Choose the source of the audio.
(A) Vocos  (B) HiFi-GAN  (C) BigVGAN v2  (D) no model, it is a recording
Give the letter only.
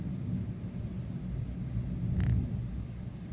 D